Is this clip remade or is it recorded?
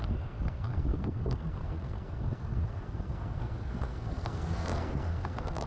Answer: remade